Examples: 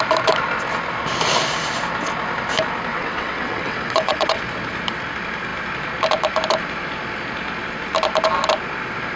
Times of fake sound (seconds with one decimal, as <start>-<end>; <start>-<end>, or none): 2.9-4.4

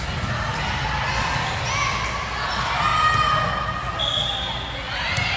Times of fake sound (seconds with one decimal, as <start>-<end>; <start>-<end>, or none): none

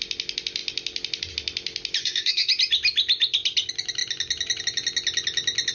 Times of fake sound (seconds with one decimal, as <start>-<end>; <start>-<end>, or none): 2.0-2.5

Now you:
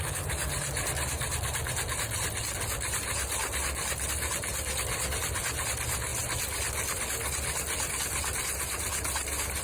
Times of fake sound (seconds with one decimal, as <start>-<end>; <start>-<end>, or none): none

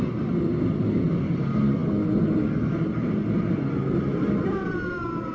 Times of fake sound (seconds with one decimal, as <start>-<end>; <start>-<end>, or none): none

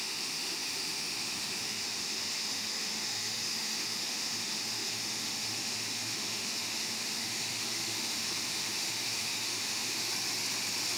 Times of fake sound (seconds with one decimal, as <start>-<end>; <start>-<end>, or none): 0.0-10.0

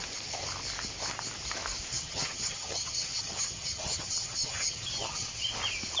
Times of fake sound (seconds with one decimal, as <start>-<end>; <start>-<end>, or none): 1.9-5.5